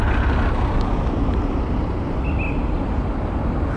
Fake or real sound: real